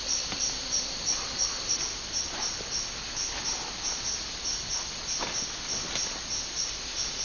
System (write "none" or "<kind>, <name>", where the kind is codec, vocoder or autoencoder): none